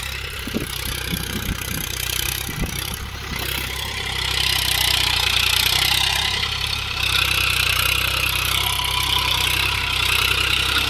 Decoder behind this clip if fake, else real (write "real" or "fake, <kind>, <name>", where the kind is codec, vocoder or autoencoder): fake, vocoder, BigVGAN v2